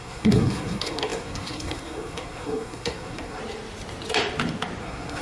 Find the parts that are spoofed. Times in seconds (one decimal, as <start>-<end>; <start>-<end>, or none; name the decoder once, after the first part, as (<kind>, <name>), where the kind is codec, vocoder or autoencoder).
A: 0.0-3.4 (codec, SNAC); 4.8-5.2

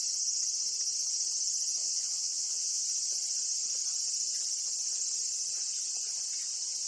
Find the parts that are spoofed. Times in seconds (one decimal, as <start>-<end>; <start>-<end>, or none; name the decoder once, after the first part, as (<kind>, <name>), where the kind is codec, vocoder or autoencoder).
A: 1.8-2.8 (vocoder, Vocos)

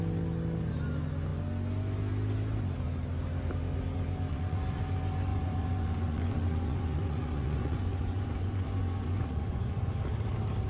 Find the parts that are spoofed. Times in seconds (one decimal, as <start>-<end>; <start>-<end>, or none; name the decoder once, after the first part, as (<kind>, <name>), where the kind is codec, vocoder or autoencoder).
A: 4.3-4.8 (vocoder, Vocos); 5.3-9.9